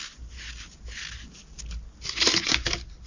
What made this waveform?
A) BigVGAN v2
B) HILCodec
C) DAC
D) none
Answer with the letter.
D